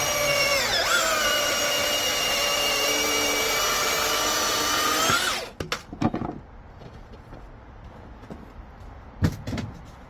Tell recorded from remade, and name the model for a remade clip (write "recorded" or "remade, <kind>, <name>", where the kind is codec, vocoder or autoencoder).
recorded